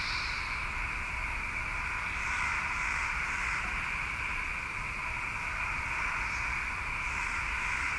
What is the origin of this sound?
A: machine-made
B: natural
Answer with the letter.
B